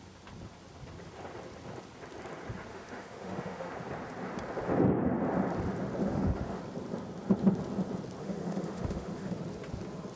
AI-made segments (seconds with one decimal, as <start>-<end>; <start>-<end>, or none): 2.7-3.7; 6.0-6.6; 8.2-9.4